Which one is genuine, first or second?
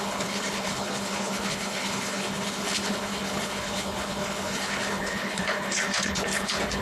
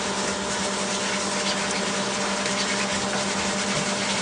second